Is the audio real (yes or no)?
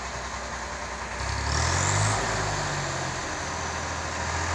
yes